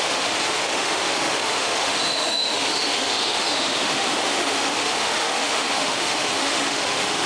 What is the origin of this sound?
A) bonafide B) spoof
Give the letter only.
B